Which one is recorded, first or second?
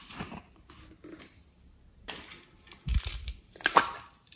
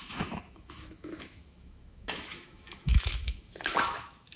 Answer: first